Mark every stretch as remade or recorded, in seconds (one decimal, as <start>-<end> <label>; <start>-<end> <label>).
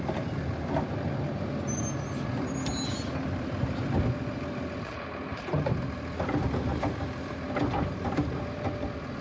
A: 0.0-9.2 recorded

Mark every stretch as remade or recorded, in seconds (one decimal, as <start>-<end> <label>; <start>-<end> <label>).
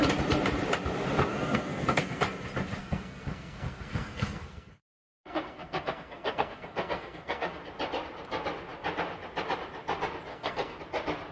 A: 0.0-1.3 recorded; 1.3-2.2 remade; 2.2-2.8 recorded; 2.8-7.6 remade; 7.6-10.3 recorded; 10.3-10.8 remade; 10.8-11.3 recorded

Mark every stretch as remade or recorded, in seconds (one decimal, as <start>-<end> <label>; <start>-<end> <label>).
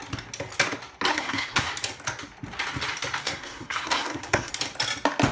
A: 0.0-1.1 recorded; 1.1-1.7 remade; 1.7-3.2 recorded; 3.2-4.5 remade; 4.5-5.3 recorded